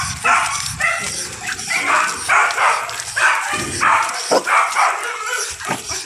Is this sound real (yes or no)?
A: yes